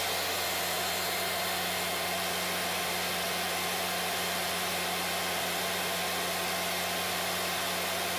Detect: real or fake real